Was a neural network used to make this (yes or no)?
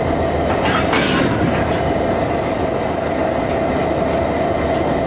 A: no